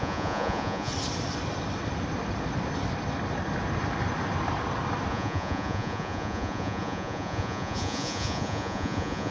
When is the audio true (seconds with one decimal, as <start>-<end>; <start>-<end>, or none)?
0.9-5.1